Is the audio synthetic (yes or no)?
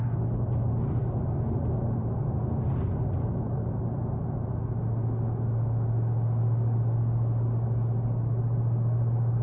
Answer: no